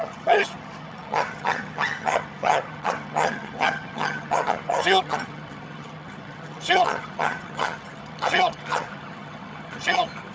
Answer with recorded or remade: remade